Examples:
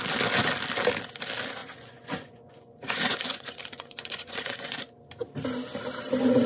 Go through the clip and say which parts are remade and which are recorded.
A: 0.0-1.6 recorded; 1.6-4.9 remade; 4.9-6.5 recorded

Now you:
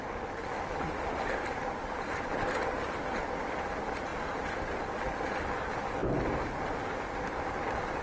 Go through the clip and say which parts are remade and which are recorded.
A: 0.0-1.1 recorded; 1.1-3.0 remade; 3.0-4.1 recorded; 4.1-4.8 remade; 4.8-8.0 recorded

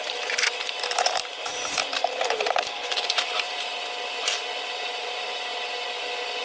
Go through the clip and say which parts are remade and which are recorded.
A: 0.0-3.8 remade; 3.8-4.6 recorded; 4.6-5.5 remade; 5.5-6.4 recorded

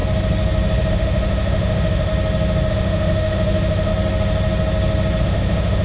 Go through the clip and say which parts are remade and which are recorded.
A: 0.0-0.9 recorded; 0.9-2.1 remade; 2.1-2.7 recorded; 2.7-3.9 remade; 3.9-5.2 recorded; 5.2-5.8 remade

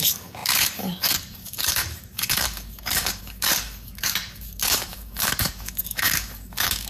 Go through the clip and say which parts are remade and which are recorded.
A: 0.0-6.9 remade

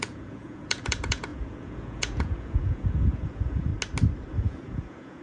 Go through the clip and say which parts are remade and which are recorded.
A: 0.0-3.7 remade; 3.7-4.3 recorded; 4.3-5.2 remade

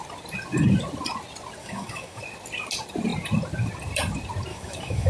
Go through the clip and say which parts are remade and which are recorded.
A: 0.0-1.6 recorded; 1.6-2.2 remade; 2.2-4.5 recorded; 4.5-5.1 remade